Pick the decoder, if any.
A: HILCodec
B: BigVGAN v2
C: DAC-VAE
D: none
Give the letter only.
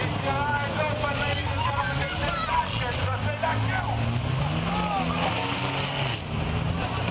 D